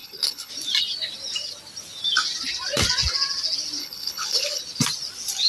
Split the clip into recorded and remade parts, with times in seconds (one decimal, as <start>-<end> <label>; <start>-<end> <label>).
0.0-0.5 remade; 0.5-3.8 recorded; 3.8-4.6 remade; 4.6-5.5 recorded